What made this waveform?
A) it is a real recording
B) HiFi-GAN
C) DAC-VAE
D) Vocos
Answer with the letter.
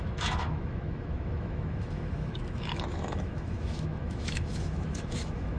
C